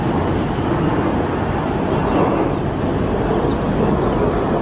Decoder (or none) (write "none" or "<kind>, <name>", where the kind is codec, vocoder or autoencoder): none